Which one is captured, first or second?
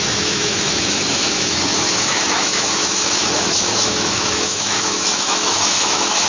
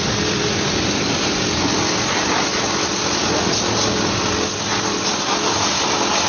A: second